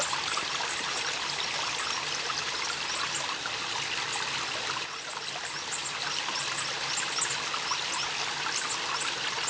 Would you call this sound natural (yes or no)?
yes